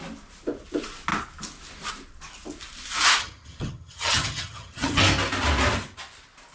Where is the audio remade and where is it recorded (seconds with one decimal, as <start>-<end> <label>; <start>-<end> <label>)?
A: 0.0-3.2 recorded; 3.2-5.0 remade; 5.0-6.5 recorded